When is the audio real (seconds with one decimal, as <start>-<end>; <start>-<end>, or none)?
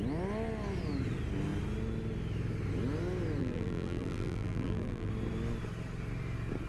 0.0-3.4; 5.1-6.7